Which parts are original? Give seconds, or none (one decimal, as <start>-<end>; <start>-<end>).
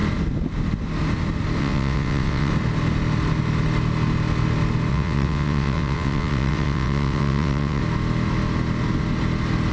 0.0-1.6; 2.5-4.9; 7.8-9.7